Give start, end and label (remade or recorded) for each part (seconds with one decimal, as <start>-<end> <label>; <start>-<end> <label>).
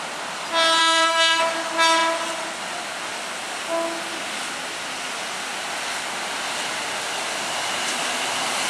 0.0-0.8 recorded; 0.8-1.4 remade; 1.4-8.7 recorded